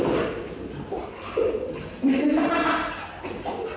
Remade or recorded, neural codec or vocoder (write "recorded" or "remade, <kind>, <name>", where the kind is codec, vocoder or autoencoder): recorded